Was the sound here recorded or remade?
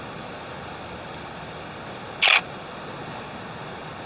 recorded